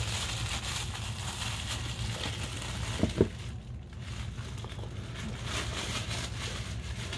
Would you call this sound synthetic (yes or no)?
no